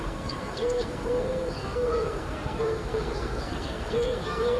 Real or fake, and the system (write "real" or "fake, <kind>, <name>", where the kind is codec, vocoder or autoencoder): fake, codec, SNAC